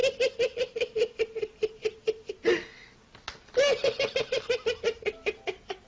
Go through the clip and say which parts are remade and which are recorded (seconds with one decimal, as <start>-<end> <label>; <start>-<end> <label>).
0.0-5.9 recorded